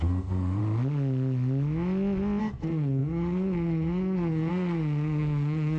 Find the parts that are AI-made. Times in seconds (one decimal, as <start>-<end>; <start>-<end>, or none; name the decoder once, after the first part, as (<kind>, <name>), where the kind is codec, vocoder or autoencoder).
0.0-0.6 (codec, SNAC); 2.4-5.8